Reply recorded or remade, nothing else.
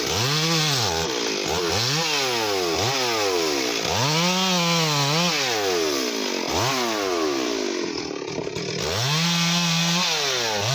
recorded